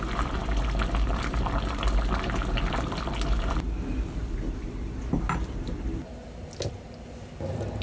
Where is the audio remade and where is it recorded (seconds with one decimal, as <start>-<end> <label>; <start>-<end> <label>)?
0.0-7.8 recorded